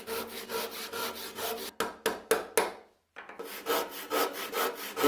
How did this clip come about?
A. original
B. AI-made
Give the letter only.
A